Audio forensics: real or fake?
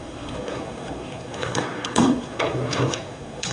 fake